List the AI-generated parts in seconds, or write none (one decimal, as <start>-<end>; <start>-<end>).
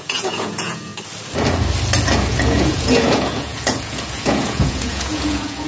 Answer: 0.0-0.9; 2.3-5.7